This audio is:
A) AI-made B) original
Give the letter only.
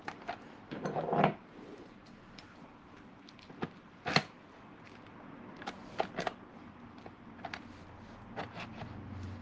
B